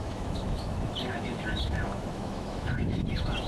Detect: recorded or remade remade